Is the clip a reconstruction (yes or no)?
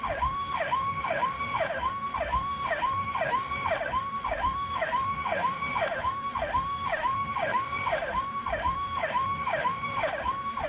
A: yes